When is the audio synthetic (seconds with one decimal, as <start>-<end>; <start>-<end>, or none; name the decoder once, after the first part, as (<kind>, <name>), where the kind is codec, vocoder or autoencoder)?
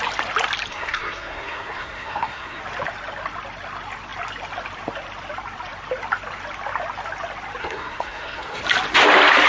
0.7-2.6 (codec, SNAC); 7.6-8.6